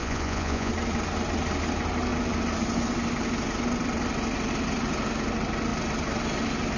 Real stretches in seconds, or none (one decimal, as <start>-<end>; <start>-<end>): 0.7-6.8